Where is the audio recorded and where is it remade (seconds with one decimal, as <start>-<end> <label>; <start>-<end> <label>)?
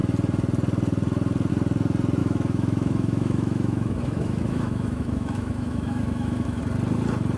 0.0-2.2 recorded; 2.2-6.6 remade; 6.6-7.4 recorded